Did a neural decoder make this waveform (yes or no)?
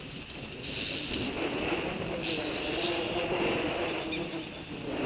no